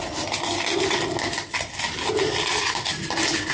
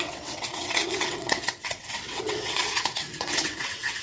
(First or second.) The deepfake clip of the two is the second